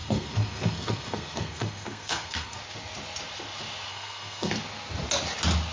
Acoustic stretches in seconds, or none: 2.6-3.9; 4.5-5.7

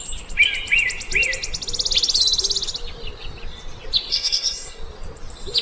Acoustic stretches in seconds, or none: 0.0-4.1; 4.8-5.6

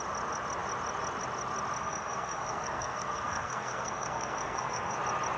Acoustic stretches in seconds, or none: 0.0-1.8; 5.0-5.4

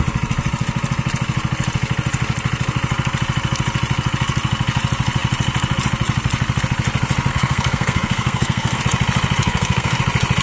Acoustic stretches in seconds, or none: 0.0-7.3; 8.8-9.4; 10.0-10.4